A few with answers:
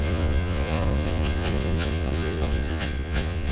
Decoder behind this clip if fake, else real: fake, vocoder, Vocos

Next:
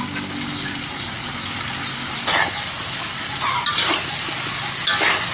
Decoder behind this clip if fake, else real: real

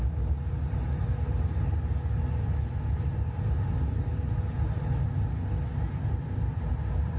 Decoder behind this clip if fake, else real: real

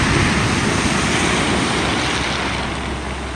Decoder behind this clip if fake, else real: real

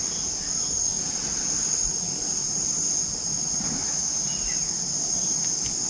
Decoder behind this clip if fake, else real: real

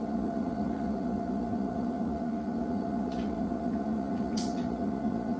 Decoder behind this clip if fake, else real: fake, vocoder, Vocos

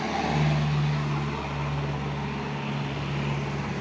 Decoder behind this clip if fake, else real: real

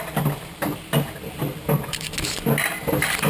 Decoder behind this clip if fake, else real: real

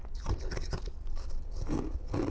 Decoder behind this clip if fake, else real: real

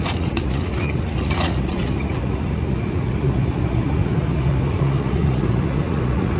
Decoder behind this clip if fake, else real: fake, vocoder, Vocos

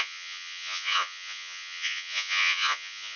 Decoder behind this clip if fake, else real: fake, vocoder, Vocos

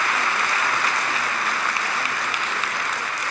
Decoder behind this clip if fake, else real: real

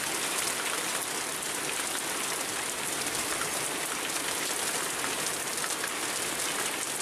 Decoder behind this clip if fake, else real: real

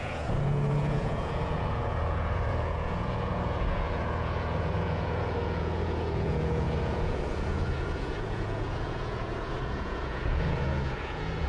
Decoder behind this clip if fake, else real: fake, vocoder, Vocos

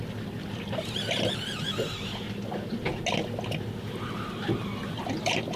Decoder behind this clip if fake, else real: real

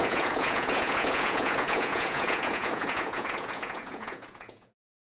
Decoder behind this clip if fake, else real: fake, vocoder, Vocos